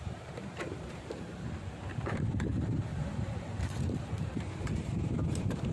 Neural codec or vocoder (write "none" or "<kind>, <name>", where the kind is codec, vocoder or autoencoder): vocoder, BigVGAN v2